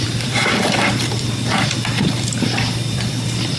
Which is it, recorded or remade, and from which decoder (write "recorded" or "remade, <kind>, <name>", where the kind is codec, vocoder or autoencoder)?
remade, vocoder, BigVGAN v2